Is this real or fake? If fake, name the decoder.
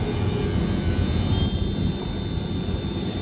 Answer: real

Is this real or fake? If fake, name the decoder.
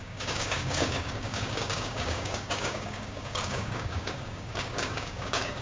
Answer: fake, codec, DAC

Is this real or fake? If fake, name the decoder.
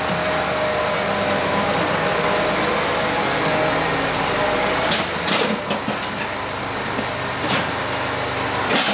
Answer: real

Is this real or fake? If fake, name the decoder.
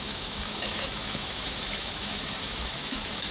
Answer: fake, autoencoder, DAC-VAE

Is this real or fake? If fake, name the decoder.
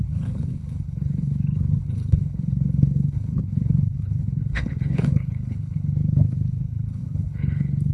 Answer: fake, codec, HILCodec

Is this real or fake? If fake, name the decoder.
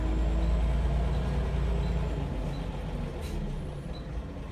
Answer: real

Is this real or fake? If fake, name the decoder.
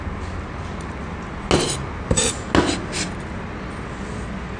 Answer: real